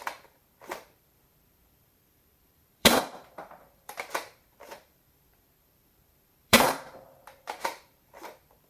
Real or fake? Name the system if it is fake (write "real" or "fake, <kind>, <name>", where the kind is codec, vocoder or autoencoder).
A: fake, vocoder, BigVGAN v2